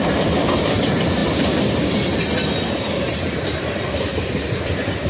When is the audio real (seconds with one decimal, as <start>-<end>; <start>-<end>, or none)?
0.0-5.1